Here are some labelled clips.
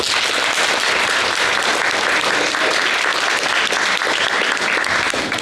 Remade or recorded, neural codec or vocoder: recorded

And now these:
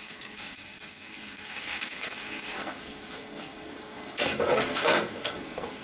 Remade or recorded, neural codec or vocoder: remade, codec, SNAC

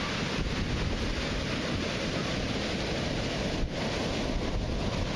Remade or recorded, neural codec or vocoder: recorded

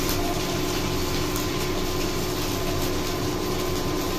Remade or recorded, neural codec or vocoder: recorded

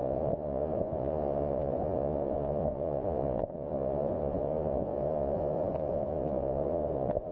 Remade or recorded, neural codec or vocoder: remade, vocoder, Vocos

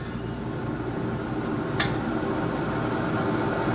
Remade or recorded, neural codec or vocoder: recorded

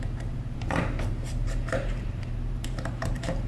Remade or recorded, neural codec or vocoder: remade, vocoder, BigVGAN v2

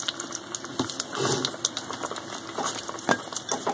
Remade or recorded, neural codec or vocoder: recorded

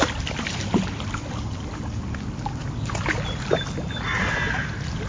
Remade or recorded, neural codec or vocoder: recorded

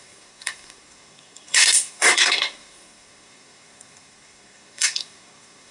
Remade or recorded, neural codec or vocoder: remade, codec, SNAC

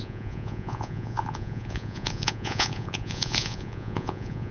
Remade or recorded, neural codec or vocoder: remade, vocoder, Vocos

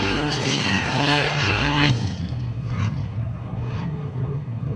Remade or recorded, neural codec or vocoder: remade, codec, SNAC